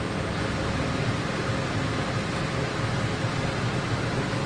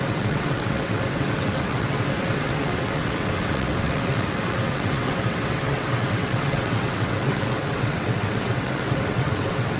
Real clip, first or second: first